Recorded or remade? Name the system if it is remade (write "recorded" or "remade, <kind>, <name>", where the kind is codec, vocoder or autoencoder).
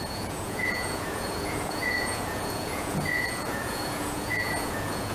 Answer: remade, vocoder, Vocos